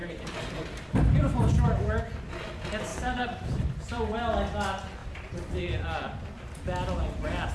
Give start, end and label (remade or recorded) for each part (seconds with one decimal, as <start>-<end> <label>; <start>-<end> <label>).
0.0-2.0 remade; 2.0-2.9 recorded; 2.9-4.2 remade; 4.2-5.0 recorded; 5.0-5.6 remade; 5.6-7.5 recorded

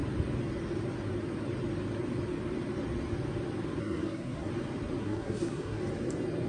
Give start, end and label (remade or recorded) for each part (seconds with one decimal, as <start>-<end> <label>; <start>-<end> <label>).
0.0-3.8 recorded; 3.8-4.5 remade; 4.5-5.0 recorded; 5.0-5.8 remade; 5.8-6.5 recorded

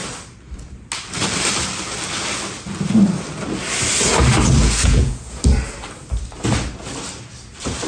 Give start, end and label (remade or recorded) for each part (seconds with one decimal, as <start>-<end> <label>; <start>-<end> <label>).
0.0-4.6 recorded; 4.6-5.4 remade; 5.4-7.9 recorded

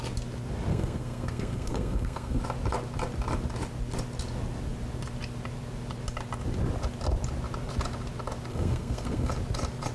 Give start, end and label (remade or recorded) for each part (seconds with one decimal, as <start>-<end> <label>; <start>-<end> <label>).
0.0-0.7 recorded; 0.7-2.4 remade; 2.4-8.5 recorded; 8.5-9.3 remade; 9.3-9.9 recorded

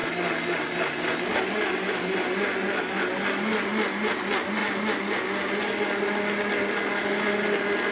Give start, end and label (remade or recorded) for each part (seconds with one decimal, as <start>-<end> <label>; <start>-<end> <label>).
0.0-7.9 recorded

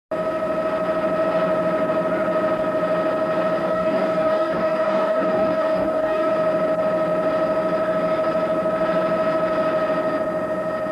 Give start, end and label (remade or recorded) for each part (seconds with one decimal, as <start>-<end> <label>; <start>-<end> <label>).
0.0-3.6 recorded; 3.6-6.3 remade; 6.3-10.9 recorded

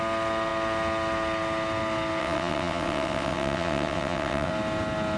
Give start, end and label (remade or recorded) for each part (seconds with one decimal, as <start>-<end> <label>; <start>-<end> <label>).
0.0-2.2 recorded; 2.2-4.5 remade; 4.5-5.2 recorded

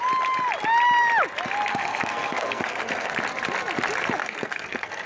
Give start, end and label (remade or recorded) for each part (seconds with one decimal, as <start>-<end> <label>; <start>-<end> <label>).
0.0-1.7 recorded; 1.7-3.1 remade; 3.1-4.2 recorded; 4.2-5.1 remade